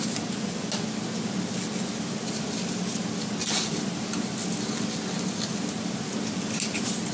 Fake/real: real